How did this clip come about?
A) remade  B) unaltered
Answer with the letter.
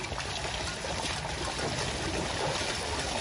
B